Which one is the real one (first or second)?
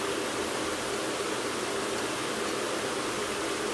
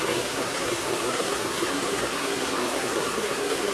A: first